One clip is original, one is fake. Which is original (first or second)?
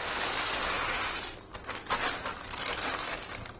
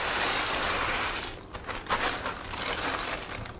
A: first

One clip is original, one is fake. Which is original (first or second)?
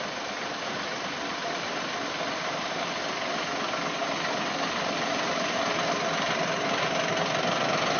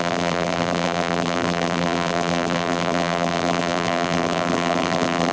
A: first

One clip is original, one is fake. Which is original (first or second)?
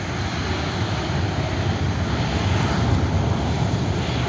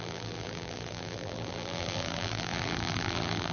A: first